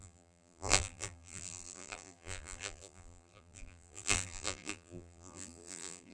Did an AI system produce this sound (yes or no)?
yes